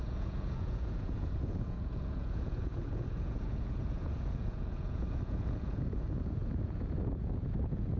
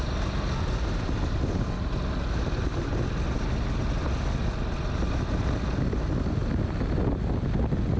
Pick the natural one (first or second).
second